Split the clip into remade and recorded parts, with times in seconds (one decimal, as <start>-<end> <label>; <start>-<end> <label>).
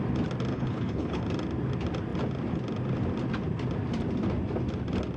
0.0-0.5 recorded; 0.5-1.2 remade; 1.2-5.2 recorded